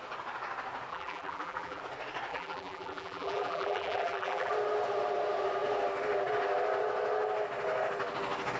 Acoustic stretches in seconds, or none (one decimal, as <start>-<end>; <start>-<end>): 0.0-0.9; 1.8-2.3; 4.5-8.6